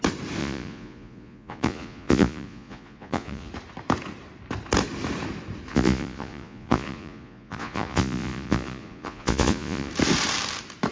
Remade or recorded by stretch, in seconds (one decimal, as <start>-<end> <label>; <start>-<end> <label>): 0.0-0.4 recorded; 0.4-3.5 remade; 3.5-5.7 recorded; 5.7-9.9 remade; 9.9-10.9 recorded